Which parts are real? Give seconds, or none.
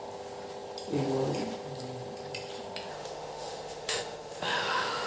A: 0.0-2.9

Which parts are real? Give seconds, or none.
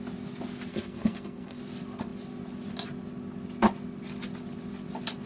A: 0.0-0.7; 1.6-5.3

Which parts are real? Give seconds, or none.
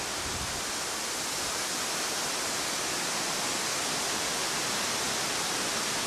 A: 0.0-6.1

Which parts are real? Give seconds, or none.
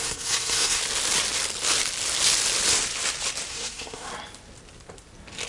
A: 0.8-3.5; 4.1-5.5